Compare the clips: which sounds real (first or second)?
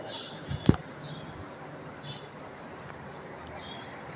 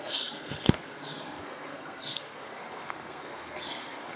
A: first